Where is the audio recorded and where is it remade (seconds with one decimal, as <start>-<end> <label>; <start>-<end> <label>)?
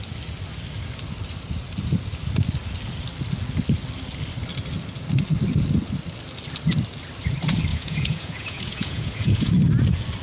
0.0-7.7 recorded; 7.7-9.5 remade; 9.5-10.2 recorded